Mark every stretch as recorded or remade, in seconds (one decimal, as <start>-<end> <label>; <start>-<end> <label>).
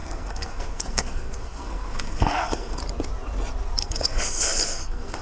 0.0-2.8 remade; 2.8-3.8 recorded; 3.8-5.2 remade